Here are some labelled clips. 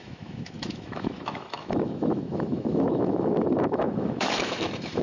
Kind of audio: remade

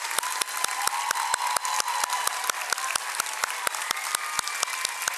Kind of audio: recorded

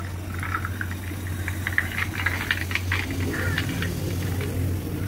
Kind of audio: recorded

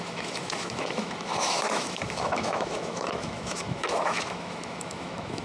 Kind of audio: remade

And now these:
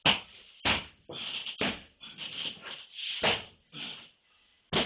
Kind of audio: recorded